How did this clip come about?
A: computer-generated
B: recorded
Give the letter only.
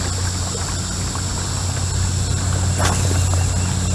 B